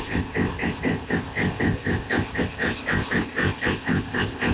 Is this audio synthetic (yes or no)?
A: yes